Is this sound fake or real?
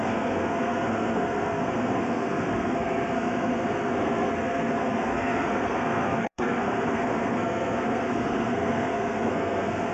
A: fake